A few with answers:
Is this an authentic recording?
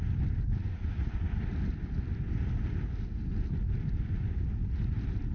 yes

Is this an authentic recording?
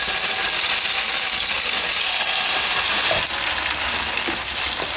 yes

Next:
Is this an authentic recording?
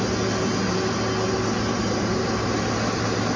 yes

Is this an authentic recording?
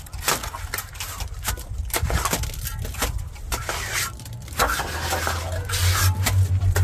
yes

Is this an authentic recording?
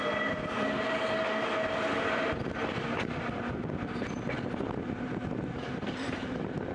yes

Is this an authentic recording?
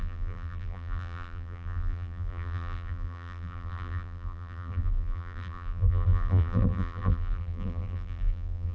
no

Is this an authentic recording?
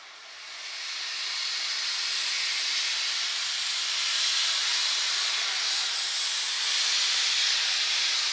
yes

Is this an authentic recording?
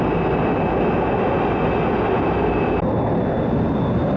yes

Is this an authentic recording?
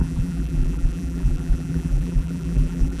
no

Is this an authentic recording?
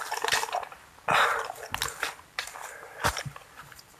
yes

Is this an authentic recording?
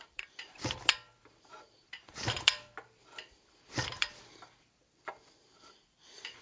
no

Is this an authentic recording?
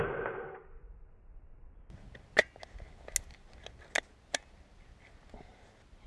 yes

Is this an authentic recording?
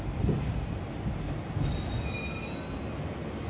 yes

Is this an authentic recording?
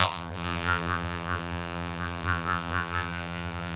no